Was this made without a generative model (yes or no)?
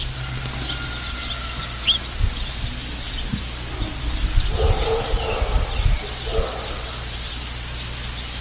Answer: yes